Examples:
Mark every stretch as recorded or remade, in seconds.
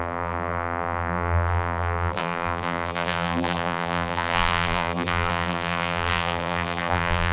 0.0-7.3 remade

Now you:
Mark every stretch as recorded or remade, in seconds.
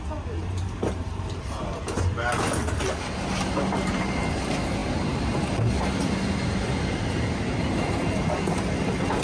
0.0-0.4 recorded; 0.4-1.8 remade; 1.8-9.2 recorded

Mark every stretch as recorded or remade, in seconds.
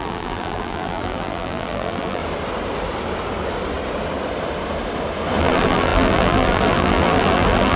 0.0-2.2 remade; 2.2-5.4 recorded; 5.4-7.8 remade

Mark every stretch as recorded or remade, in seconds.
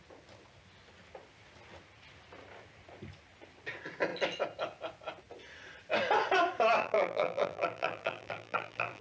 0.0-6.8 recorded; 6.8-9.0 remade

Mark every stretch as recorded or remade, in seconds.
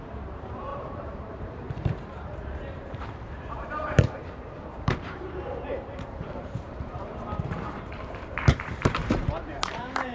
0.0-10.1 remade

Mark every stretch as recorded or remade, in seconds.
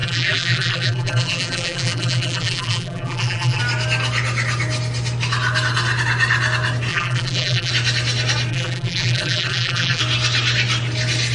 0.0-3.6 remade; 3.6-6.9 recorded; 6.9-7.7 remade; 7.7-8.5 recorded; 8.5-10.0 remade; 10.0-11.3 recorded